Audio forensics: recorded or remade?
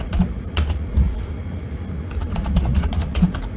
remade